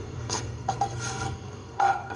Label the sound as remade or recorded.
remade